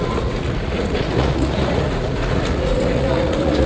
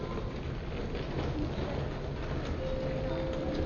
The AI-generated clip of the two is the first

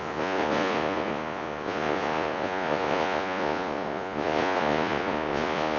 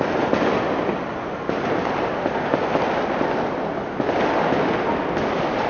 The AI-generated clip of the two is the first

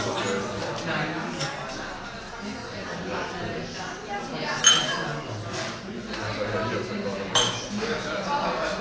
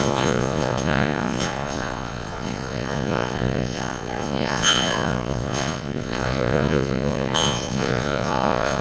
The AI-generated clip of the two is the second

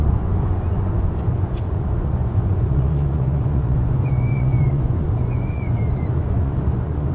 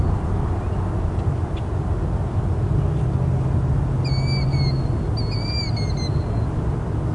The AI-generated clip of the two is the first